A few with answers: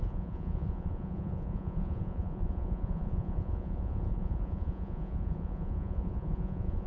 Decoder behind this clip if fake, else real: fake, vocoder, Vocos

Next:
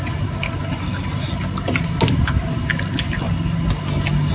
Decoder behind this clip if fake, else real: real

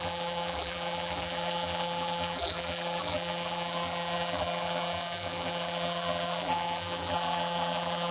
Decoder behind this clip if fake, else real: fake, vocoder, BigVGAN v2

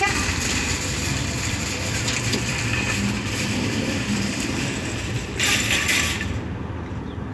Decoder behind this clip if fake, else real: fake, vocoder, BigVGAN v2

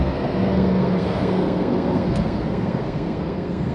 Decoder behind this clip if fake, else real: fake, codec, SNAC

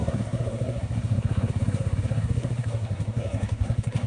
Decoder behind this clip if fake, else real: fake, codec, SNAC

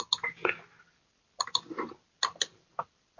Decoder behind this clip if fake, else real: real